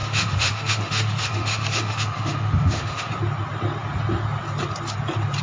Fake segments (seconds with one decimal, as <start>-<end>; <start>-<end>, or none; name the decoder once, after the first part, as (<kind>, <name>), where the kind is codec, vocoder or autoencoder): 0.0-3.1 (autoencoder, DAC-VAE)